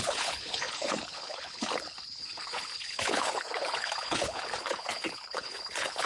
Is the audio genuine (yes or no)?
no